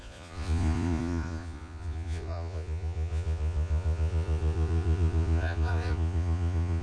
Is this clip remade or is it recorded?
remade